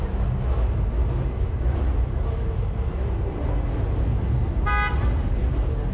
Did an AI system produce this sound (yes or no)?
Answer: no